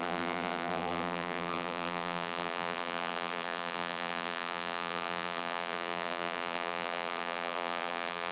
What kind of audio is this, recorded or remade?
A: remade